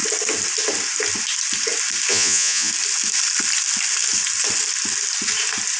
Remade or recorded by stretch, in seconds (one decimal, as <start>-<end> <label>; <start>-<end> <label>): 0.0-2.1 recorded; 2.1-2.7 remade; 2.7-5.8 recorded